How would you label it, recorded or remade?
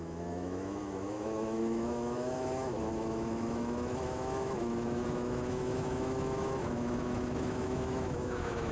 remade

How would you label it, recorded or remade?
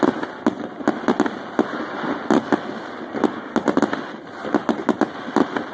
recorded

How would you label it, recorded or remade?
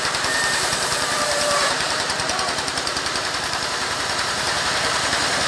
remade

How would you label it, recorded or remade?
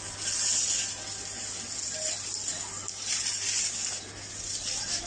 recorded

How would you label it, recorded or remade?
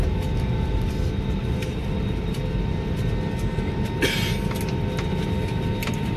recorded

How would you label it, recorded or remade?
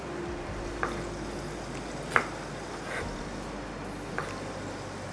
recorded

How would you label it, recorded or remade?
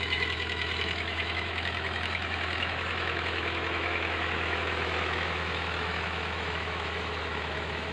remade